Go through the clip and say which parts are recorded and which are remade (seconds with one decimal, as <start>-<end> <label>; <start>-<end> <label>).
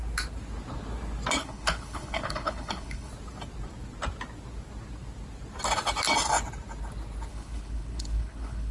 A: 0.0-1.4 recorded; 1.4-3.1 remade; 3.1-7.3 recorded; 7.3-8.7 remade